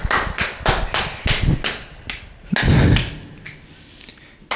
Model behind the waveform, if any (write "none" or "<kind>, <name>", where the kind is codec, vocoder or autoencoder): none